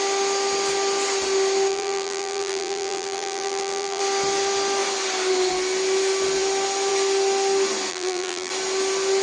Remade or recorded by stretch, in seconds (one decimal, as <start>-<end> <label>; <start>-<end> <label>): 0.0-1.7 recorded; 1.7-4.0 remade; 4.0-7.9 recorded; 7.9-8.5 remade; 8.5-9.2 recorded